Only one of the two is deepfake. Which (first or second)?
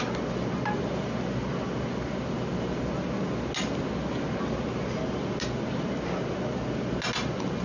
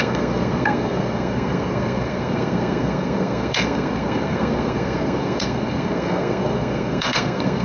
second